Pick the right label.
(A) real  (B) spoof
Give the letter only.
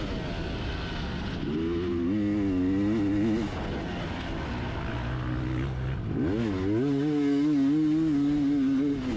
A